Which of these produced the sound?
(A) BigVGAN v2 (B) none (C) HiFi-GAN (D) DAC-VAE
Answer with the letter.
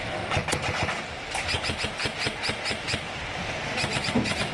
A